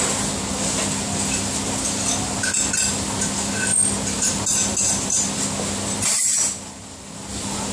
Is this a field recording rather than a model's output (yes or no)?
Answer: yes